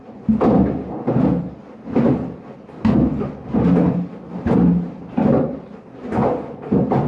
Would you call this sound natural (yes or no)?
yes